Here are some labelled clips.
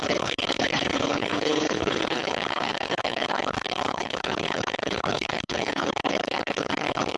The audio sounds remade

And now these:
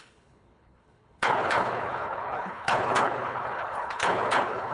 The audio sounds remade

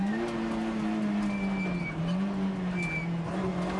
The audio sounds recorded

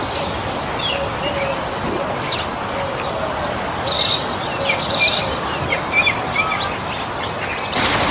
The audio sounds recorded